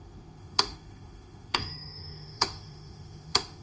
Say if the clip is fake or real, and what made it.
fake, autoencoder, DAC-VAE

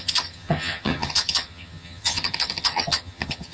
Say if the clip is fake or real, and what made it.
fake, vocoder, HiFi-GAN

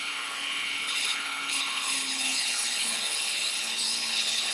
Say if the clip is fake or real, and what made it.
fake, codec, HILCodec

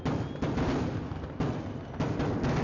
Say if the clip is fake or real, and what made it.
real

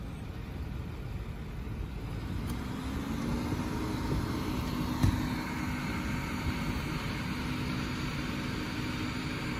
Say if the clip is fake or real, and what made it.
real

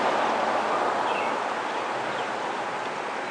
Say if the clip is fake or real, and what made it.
real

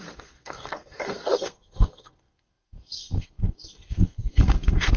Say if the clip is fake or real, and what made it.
fake, codec, SNAC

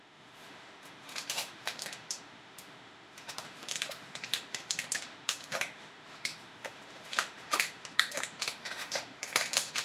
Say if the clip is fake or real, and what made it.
fake, autoencoder, DAC-VAE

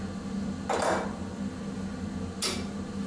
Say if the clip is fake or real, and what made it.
real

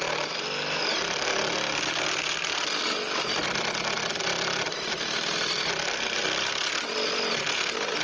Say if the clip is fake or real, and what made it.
real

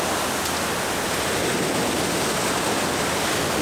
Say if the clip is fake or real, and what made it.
real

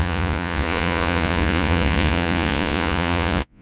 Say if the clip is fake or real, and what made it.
fake, vocoder, Vocos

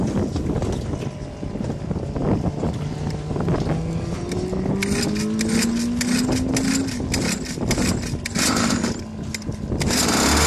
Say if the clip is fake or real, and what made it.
real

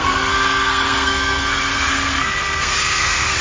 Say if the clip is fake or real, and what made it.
fake, codec, SNAC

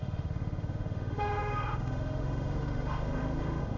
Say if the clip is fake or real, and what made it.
fake, autoencoder, DAC-VAE